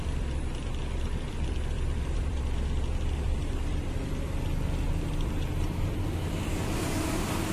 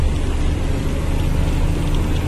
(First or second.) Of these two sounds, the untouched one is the second